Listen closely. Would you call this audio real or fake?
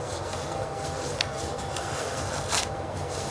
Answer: fake